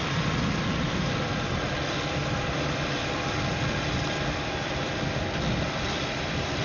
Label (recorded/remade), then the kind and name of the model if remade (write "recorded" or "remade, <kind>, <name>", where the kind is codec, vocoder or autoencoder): remade, vocoder, BigVGAN v2